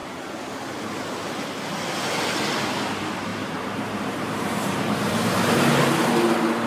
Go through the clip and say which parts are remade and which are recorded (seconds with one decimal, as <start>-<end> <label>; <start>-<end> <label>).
0.0-3.3 recorded; 3.3-5.5 remade; 5.5-6.7 recorded